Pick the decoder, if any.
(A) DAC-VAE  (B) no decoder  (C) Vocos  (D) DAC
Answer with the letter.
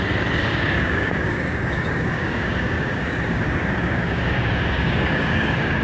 D